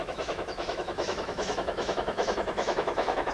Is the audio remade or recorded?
remade